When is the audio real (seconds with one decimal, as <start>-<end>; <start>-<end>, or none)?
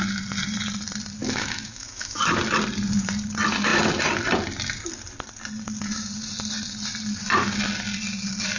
0.0-1.2; 2.2-8.6